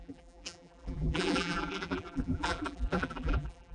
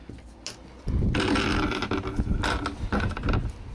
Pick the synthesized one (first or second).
first